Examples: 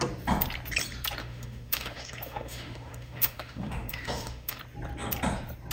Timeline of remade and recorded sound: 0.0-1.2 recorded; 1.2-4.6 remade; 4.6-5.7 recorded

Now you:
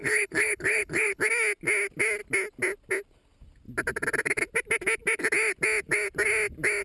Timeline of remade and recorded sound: 0.0-1.2 remade; 1.2-6.8 recorded